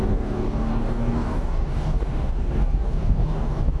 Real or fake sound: fake